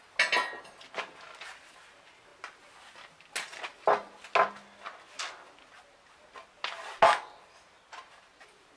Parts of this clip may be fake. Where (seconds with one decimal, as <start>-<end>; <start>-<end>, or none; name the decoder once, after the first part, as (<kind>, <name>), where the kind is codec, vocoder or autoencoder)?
none